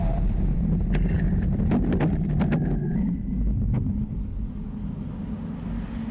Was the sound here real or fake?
real